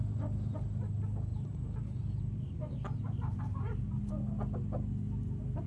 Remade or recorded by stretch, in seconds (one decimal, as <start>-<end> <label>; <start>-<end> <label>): 0.0-1.3 recorded; 1.3-4.1 remade; 4.1-5.7 recorded